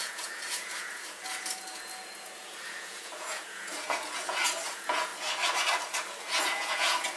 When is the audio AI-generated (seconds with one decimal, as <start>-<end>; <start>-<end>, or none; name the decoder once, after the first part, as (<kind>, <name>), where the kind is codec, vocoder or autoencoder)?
0.0-5.1 (vocoder, Vocos); 6.2-7.2